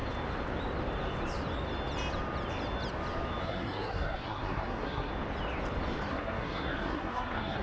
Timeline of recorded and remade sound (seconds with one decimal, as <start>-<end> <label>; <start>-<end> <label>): 0.0-3.4 recorded; 3.4-5.1 remade; 5.1-6.1 recorded; 6.1-7.6 remade